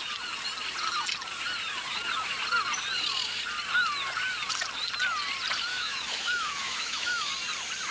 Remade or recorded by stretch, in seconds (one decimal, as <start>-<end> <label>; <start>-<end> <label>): 0.0-5.7 recorded; 5.7-7.3 remade; 7.3-7.9 recorded